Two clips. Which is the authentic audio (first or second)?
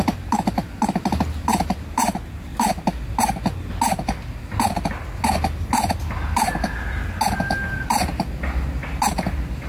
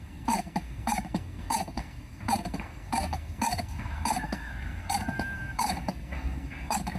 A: first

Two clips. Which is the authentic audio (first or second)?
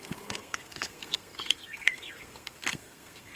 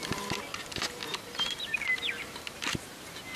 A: second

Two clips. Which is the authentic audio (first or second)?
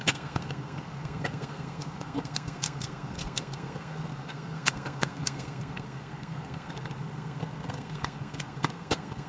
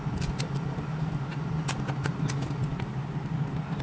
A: second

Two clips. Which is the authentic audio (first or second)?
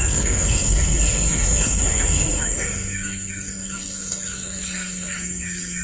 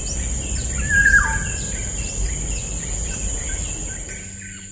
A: second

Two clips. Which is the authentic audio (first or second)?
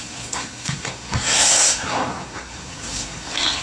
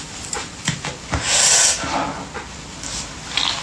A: second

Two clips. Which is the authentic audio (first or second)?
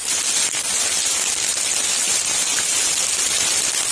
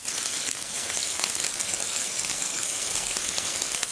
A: first